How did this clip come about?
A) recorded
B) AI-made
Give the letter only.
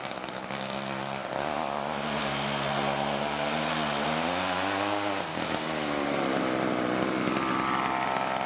A